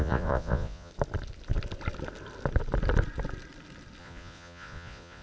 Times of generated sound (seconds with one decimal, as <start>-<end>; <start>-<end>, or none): 0.0-0.9; 4.0-5.2

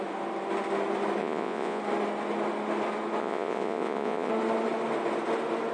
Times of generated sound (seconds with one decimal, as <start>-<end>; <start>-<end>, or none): 1.2-1.8; 3.2-4.3

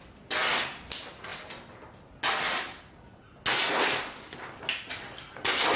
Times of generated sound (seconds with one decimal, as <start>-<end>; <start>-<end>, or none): none

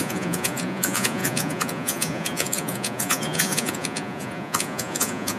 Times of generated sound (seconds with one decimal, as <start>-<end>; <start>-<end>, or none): 0.0-5.4

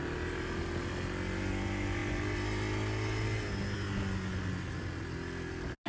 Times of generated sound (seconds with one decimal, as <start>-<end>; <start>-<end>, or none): none

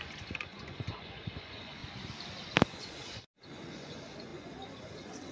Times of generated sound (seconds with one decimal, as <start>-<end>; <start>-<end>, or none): 0.0-1.8; 2.6-5.3

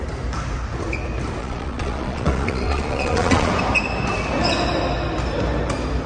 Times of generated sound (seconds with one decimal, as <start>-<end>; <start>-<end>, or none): 1.4-3.5